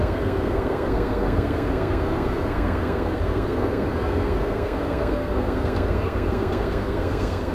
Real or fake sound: fake